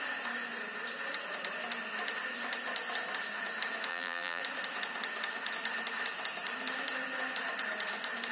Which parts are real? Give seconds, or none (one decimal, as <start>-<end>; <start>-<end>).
0.0-3.9; 4.4-8.3